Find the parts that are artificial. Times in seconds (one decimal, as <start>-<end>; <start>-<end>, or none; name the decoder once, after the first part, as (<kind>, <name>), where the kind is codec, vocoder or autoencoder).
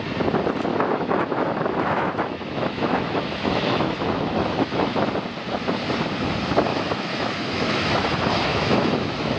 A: 0.7-5.1 (autoencoder, DAC-VAE); 6.7-8.0; 8.5-9.4